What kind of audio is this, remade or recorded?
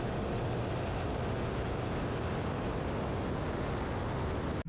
recorded